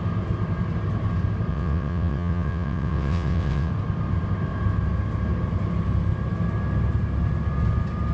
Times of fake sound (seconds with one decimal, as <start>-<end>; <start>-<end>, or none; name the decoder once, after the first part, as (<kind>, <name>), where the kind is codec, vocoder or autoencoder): 1.5-3.7 (vocoder, WaveNeXt)